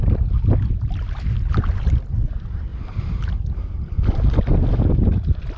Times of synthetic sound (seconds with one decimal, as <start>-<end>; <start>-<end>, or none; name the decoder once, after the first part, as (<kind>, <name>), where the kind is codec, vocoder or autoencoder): 2.7-3.3 (vocoder, BigVGAN v2)